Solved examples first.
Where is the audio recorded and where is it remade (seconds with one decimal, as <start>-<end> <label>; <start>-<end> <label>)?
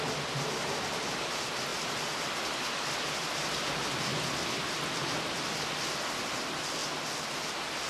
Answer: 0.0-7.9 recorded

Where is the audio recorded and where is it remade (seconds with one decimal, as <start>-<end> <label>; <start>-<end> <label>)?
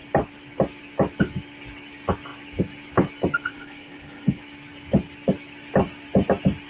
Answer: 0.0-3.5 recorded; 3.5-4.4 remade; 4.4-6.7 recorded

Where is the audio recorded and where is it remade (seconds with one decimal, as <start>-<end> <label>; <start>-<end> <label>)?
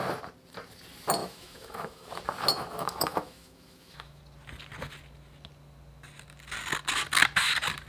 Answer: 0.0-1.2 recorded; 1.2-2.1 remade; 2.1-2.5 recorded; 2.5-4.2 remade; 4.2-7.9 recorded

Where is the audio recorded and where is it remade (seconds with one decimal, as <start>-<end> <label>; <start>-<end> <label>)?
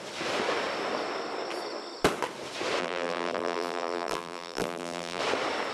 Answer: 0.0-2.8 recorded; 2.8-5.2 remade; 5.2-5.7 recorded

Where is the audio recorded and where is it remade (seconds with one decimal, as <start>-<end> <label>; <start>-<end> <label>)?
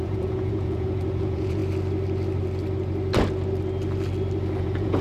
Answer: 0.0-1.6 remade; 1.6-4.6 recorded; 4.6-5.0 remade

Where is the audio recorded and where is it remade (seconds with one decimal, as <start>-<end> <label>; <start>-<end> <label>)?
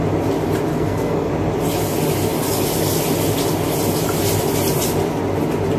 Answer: 0.0-0.7 recorded; 0.7-1.3 remade; 1.3-5.8 recorded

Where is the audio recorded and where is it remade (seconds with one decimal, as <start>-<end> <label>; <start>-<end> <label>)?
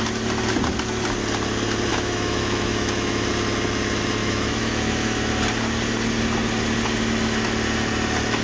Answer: 0.0-1.9 recorded; 1.9-3.3 remade; 3.3-4.2 recorded; 4.2-5.3 remade; 5.3-8.4 recorded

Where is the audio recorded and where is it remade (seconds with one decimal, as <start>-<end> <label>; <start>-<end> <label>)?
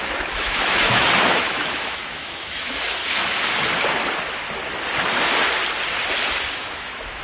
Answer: 0.0-3.0 remade; 3.0-6.5 recorded; 6.5-7.2 remade